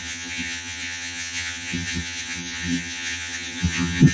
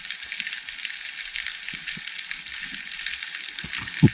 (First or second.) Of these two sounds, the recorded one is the second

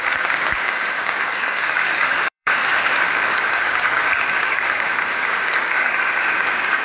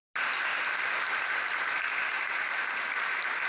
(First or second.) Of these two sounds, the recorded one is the second